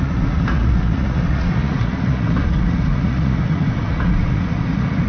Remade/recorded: remade